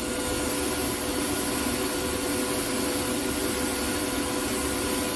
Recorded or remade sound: recorded